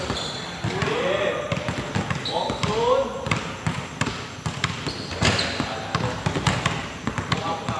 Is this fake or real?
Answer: real